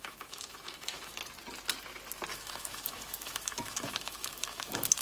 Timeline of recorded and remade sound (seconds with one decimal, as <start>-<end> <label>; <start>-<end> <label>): 0.0-1.2 remade; 1.2-2.3 recorded; 2.3-5.0 remade